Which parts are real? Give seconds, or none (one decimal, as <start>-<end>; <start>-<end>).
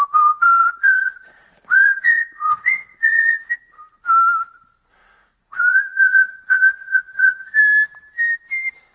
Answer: 0.0-0.6; 3.5-5.0; 7.6-8.9